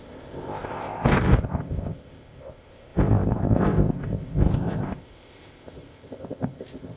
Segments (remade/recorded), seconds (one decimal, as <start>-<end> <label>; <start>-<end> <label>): 0.0-7.0 remade